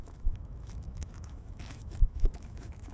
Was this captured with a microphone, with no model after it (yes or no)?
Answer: no